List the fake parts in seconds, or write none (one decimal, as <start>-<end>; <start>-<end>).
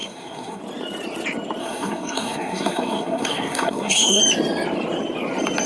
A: 0.0-0.6; 1.6-4.2